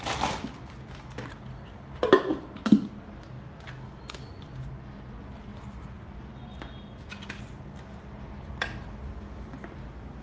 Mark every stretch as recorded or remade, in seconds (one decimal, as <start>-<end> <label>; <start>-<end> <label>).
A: 0.0-10.2 recorded